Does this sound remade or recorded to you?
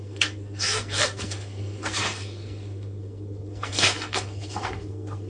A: remade